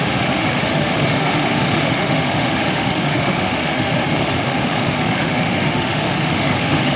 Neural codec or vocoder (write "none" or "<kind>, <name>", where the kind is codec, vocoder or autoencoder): autoencoder, DAC-VAE